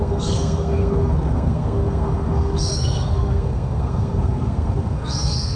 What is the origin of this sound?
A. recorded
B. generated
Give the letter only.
B